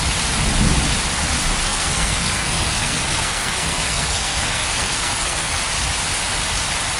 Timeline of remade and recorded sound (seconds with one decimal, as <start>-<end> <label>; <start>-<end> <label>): 0.0-1.6 recorded; 1.6-5.6 remade; 5.6-7.0 recorded